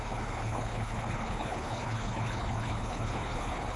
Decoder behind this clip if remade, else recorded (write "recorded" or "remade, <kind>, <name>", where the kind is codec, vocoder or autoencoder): remade, codec, HILCodec